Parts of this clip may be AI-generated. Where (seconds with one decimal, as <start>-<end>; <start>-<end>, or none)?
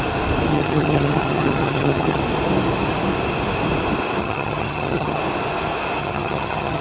0.5-2.2; 4.2-5.2; 6.0-6.8